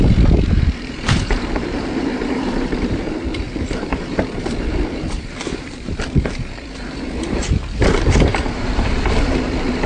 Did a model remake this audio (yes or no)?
yes